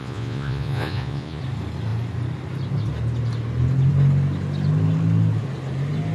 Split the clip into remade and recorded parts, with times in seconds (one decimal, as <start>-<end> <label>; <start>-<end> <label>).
0.0-1.4 remade; 1.4-6.1 recorded